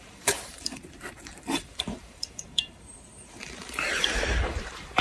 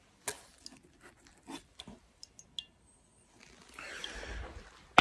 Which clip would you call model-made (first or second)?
first